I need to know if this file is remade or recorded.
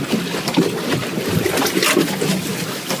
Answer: recorded